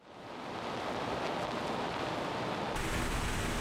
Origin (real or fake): real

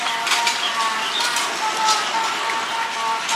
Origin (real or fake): real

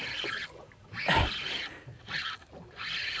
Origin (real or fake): real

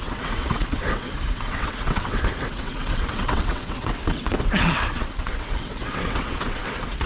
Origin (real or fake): fake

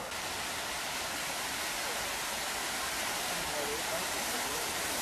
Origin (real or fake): real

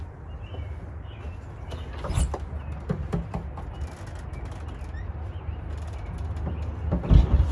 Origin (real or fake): real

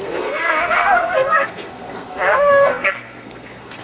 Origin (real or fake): fake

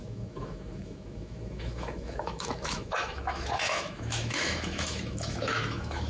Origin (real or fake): fake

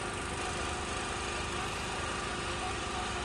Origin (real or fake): real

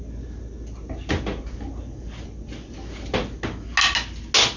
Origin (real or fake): real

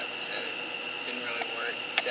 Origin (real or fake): real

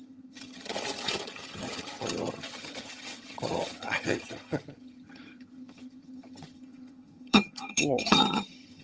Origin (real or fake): fake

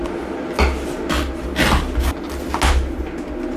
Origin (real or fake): real